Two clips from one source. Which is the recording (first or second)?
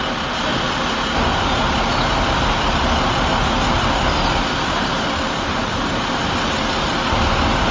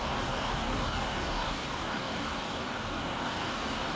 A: first